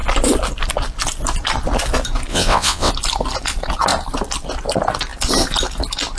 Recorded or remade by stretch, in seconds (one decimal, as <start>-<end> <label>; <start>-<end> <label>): 0.0-2.3 recorded; 2.3-2.9 remade; 2.9-6.2 recorded